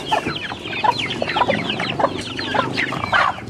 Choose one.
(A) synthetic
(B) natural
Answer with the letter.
B